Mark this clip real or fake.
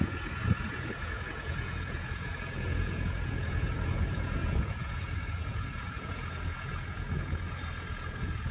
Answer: fake